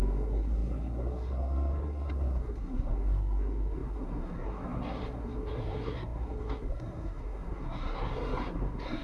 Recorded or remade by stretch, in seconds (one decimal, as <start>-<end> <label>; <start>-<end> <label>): 0.0-9.0 remade